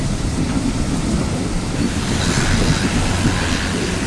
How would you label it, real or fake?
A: real